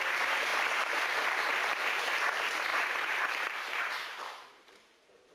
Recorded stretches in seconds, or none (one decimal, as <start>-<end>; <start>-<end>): none